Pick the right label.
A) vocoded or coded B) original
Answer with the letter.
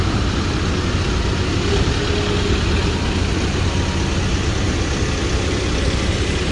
B